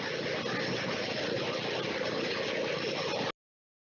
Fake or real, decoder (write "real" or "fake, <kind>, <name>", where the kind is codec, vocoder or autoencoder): real